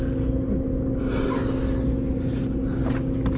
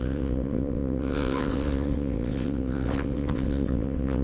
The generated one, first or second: second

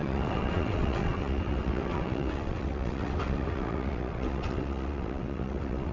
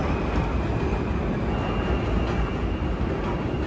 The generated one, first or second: first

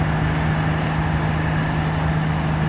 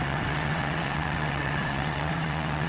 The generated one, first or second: second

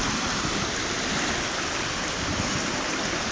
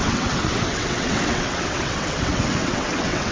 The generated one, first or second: second